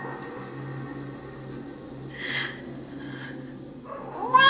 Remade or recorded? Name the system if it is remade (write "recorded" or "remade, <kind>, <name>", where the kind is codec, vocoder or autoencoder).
recorded